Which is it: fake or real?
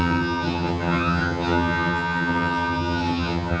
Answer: fake